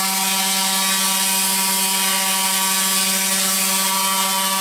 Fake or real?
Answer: real